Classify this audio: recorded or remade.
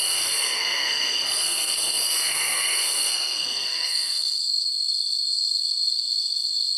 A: remade